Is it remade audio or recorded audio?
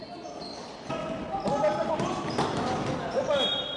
recorded